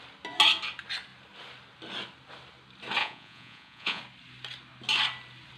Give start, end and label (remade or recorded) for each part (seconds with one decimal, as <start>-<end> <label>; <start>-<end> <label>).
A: 0.0-3.0 recorded; 3.0-4.0 remade; 4.0-5.6 recorded